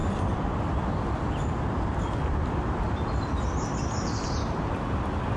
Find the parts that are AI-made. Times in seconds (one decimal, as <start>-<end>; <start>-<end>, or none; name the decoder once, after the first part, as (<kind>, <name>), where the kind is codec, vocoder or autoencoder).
none